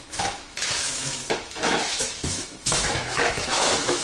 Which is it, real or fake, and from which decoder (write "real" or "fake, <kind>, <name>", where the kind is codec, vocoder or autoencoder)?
fake, autoencoder, DAC-VAE